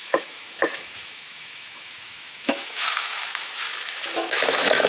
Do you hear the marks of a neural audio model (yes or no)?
yes